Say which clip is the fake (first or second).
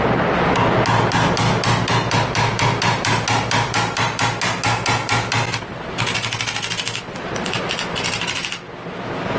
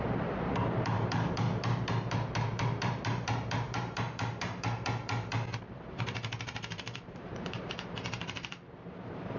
second